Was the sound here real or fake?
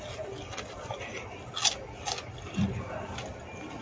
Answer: real